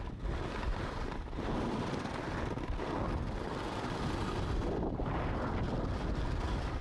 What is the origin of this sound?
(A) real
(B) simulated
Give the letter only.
A